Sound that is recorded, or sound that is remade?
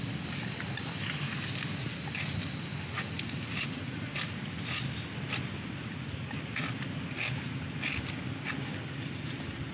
recorded